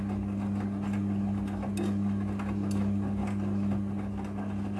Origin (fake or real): real